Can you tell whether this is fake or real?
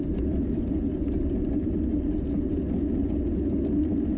real